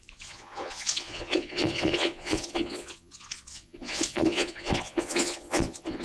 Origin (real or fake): fake